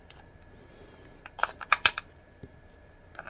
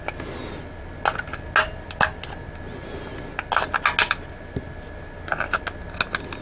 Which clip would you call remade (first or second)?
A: first